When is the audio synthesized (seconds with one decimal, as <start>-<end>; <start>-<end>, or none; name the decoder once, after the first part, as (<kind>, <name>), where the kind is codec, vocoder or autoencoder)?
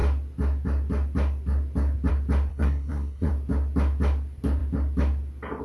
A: 2.5-3.3 (codec, SNAC)